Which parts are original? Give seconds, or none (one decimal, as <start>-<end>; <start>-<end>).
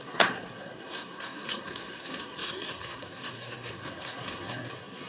none